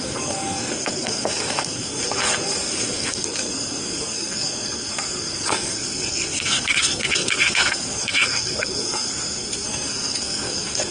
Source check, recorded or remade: remade